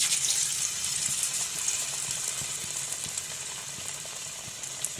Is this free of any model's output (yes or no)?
no